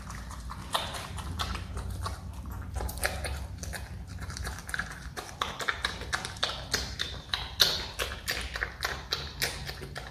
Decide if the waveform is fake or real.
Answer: real